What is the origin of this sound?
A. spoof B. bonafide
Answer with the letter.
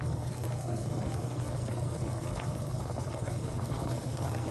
A